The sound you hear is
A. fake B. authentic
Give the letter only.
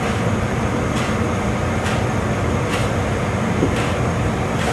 B